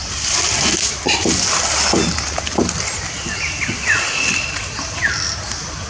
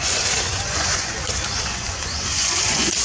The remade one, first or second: second